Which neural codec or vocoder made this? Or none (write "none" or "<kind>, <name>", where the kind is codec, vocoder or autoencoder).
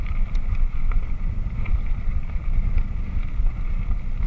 none